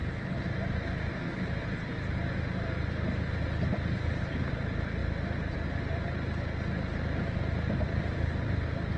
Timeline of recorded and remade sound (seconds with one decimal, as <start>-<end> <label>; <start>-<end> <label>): 0.0-9.0 recorded